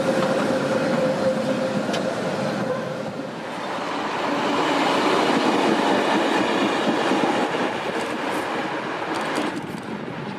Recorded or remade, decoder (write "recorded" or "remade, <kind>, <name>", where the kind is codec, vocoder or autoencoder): recorded